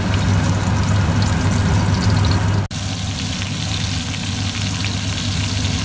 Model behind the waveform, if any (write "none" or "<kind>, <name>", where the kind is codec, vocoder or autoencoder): none